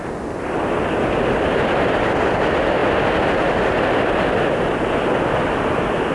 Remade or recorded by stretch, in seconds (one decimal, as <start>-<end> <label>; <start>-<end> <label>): 0.0-6.1 recorded